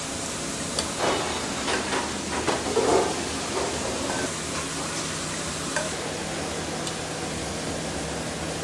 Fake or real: real